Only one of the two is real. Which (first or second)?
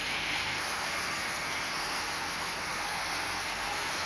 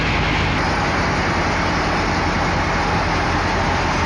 second